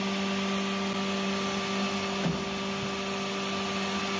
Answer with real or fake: real